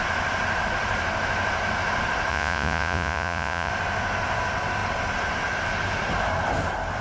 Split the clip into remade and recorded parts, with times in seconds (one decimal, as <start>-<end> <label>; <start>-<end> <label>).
0.0-2.3 recorded; 2.3-3.7 remade; 3.7-7.0 recorded